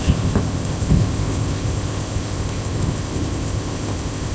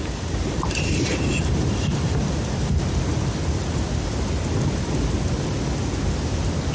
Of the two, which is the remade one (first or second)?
first